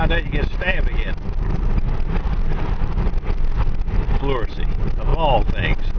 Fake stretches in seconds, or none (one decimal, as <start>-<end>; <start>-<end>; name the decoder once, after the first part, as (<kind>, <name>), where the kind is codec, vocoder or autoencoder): 0.7-3.6 (vocoder, BigVGAN v2)